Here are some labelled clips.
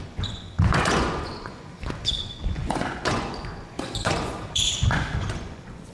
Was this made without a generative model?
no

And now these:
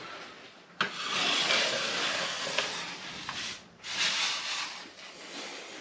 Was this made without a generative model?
yes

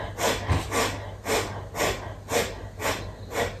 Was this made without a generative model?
yes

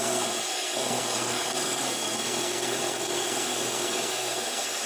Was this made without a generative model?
no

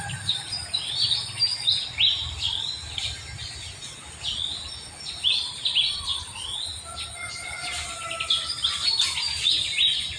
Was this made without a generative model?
yes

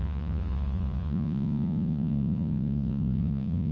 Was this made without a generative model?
no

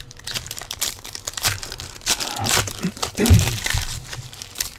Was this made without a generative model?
no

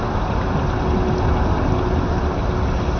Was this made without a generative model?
yes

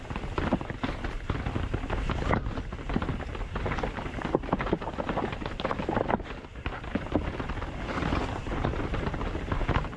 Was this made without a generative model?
yes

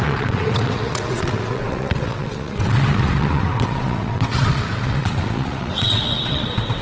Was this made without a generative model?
no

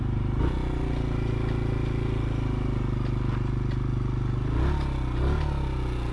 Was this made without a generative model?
yes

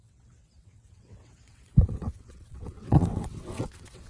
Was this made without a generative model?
no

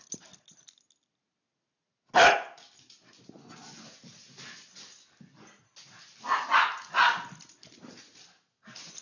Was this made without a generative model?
yes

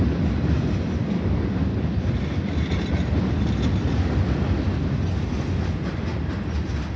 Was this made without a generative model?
yes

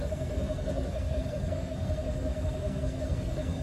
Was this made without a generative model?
no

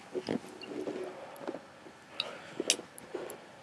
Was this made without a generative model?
yes